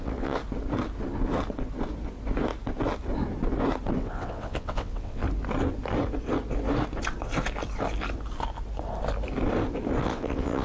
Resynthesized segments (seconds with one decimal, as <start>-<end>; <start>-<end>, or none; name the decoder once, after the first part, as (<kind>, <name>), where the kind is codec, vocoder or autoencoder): 0.0-0.4 (vocoder, WaveNeXt); 4.0-5.2; 10.0-10.6